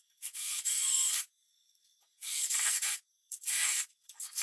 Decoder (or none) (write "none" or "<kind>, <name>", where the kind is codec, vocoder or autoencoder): codec, SNAC